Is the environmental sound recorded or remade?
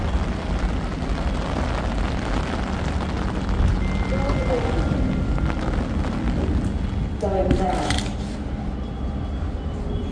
recorded